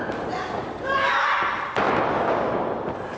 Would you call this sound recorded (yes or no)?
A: yes